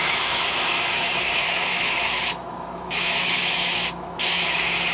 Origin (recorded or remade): remade